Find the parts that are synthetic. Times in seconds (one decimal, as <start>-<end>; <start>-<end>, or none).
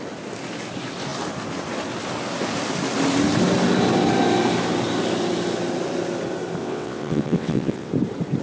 6.6-7.9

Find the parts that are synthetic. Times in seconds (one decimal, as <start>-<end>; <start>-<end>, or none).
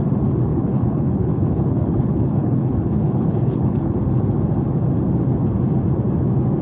0.5-4.2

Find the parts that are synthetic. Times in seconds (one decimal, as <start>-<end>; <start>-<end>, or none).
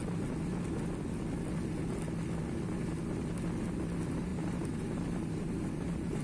4.3-6.2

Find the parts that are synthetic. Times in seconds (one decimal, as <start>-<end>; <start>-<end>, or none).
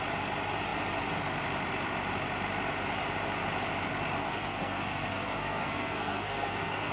4.2-6.9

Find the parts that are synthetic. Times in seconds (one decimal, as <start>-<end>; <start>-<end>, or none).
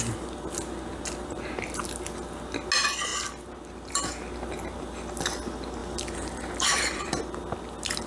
5.8-7.2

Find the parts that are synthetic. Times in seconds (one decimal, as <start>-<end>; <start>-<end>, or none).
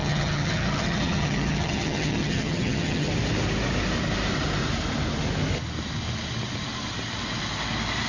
0.0-3.1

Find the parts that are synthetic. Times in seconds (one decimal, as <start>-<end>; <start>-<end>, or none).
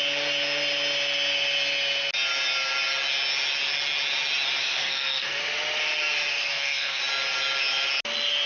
4.6-5.4; 6.3-7.0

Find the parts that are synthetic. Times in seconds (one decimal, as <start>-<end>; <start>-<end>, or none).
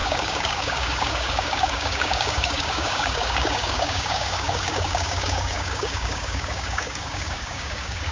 0.0-8.1